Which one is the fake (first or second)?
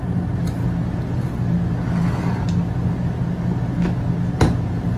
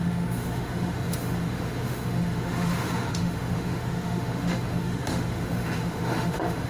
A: second